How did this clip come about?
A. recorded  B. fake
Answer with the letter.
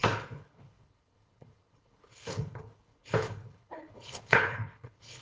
B